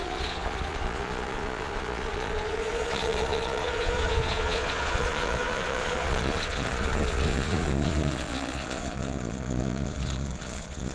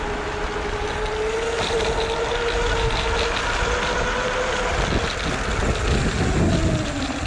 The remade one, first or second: first